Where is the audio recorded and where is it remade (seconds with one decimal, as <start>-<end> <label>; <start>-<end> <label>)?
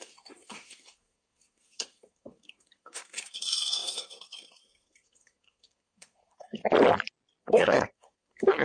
0.0-6.6 remade; 6.6-7.4 recorded; 7.4-8.6 remade